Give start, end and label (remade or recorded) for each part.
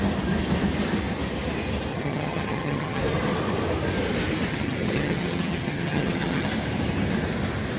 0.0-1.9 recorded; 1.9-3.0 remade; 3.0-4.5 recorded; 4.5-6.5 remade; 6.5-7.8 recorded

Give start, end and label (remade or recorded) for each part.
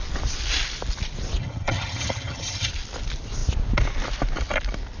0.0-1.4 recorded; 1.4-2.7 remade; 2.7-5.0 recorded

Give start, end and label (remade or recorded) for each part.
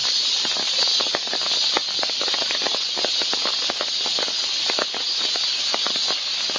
0.0-6.6 recorded